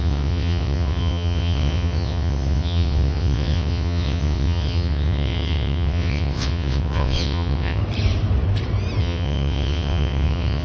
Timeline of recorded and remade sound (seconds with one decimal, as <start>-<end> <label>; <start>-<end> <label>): 0.0-7.8 remade; 7.8-9.0 recorded; 9.0-10.6 remade